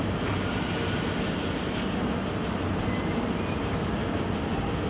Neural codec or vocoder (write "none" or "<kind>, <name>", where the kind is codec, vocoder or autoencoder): none